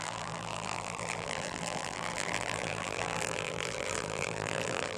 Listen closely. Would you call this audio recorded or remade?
remade